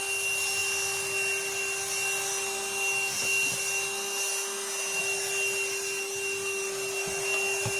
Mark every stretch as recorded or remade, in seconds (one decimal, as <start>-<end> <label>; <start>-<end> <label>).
0.0-7.8 recorded